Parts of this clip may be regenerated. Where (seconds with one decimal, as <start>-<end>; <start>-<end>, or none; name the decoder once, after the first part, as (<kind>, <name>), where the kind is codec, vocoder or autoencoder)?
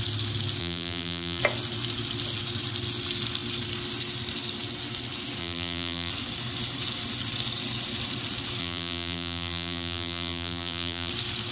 0.6-1.4 (vocoder, BigVGAN v2); 5.4-6.1; 8.6-11.1